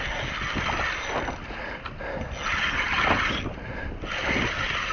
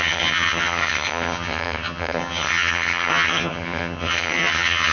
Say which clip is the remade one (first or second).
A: second